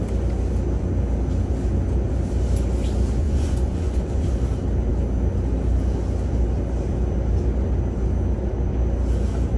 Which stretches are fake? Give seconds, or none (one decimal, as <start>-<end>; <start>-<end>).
3.2-4.3